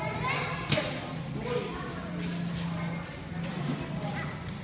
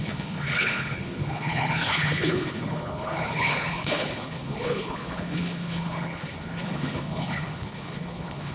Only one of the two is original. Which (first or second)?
first